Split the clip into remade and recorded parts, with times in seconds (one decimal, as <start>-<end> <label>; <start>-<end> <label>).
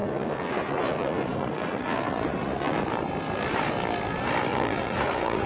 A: 0.0-2.9 remade; 2.9-4.5 recorded; 4.5-5.5 remade